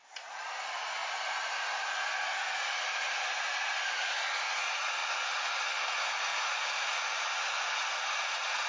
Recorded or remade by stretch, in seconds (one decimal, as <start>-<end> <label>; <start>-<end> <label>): 0.0-6.3 recorded; 6.3-7.0 remade; 7.0-8.7 recorded